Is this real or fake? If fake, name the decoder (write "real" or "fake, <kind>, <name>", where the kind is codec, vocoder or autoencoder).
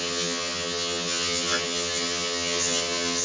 fake, vocoder, HiFi-GAN